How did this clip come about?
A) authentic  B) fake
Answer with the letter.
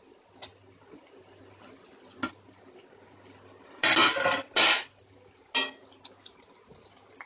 A